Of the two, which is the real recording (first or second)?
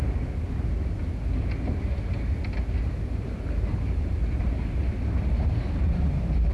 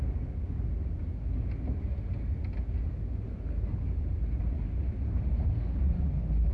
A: second